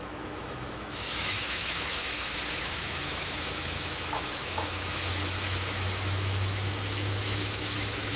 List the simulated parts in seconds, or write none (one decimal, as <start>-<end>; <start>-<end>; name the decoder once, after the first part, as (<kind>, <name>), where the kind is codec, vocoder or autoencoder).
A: 0.0-8.2 (autoencoder, DAC-VAE)